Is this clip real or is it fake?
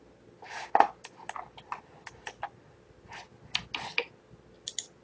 real